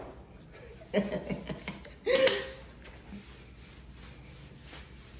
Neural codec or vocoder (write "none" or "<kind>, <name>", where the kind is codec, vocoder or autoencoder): none